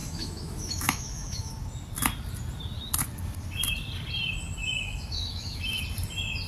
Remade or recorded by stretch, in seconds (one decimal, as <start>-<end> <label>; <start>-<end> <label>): 0.0-1.5 remade; 1.5-4.6 recorded; 4.6-5.8 remade; 5.8-6.5 recorded